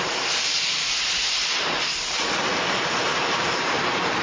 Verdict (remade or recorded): remade